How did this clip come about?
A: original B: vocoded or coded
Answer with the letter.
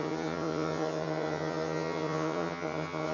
B